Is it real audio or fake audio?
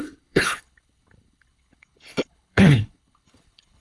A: fake